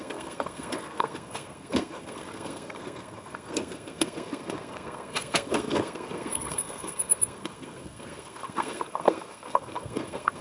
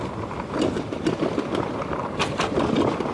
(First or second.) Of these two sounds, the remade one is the first